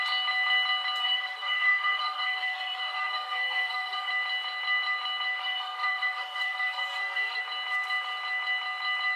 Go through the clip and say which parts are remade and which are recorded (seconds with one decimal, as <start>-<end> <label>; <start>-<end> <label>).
0.0-1.0 recorded; 1.0-4.1 remade; 4.1-5.4 recorded; 5.4-7.4 remade; 7.4-9.2 recorded

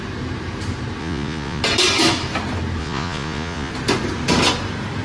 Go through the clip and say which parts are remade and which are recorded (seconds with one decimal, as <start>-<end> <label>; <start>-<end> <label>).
0.0-1.0 recorded; 1.0-1.6 remade; 1.6-2.8 recorded; 2.8-3.7 remade; 3.7-5.0 recorded

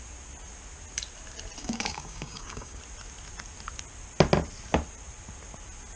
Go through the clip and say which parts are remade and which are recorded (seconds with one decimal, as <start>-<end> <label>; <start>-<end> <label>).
0.0-1.6 recorded; 1.6-2.8 remade; 2.8-6.0 recorded